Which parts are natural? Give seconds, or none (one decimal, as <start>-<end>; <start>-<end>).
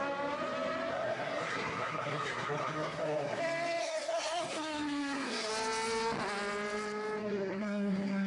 0.0-0.9; 3.4-3.8; 5.5-7.2